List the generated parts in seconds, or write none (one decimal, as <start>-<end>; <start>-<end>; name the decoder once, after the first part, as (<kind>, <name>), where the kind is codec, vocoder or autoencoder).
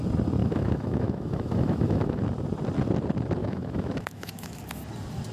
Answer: 0.4-2.2 (autoencoder, DAC-VAE); 3.4-4.6